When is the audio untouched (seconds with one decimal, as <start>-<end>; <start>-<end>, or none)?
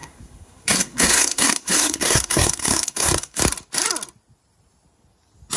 3.4-5.6